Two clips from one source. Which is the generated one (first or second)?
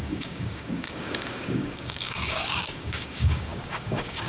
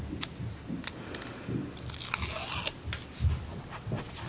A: first